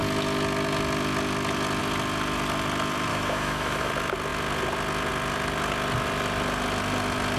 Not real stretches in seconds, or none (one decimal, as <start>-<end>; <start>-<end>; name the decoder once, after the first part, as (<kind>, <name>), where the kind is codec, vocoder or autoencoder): 3.1-3.9 (autoencoder, DAC-VAE)